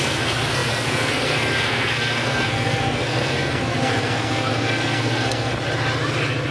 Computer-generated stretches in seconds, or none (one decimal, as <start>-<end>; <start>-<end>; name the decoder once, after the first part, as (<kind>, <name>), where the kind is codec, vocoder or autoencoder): 0.0-5.5 (codec, SNAC)

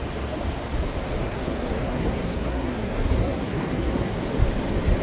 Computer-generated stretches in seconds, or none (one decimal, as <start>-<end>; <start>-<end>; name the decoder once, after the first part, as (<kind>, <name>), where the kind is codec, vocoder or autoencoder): 1.2-4.2 (codec, SNAC)

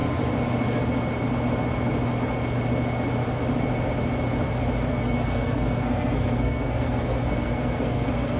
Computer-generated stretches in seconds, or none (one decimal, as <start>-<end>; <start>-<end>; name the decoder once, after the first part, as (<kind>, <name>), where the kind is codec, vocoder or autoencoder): 4.9-8.4 (codec, SNAC)

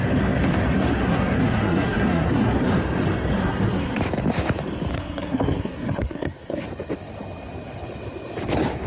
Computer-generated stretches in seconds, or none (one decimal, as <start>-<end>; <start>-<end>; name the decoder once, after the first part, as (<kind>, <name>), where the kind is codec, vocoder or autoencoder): 0.9-2.6 (codec, SNAC); 3.4-4.0; 4.9-6.6

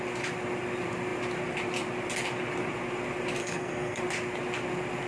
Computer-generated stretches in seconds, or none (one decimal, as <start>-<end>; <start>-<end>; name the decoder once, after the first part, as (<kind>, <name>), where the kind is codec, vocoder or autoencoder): 3.4-4.0 (codec, SNAC)